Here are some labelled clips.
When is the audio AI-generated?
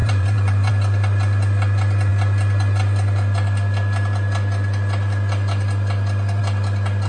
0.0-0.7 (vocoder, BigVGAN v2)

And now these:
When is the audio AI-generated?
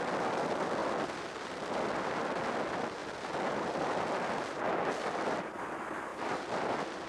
0.8-2.2 (vocoder, BigVGAN v2); 3.0-4.0; 6.1-7.1